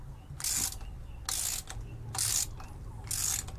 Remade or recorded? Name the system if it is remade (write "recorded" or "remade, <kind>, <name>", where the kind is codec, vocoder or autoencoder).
recorded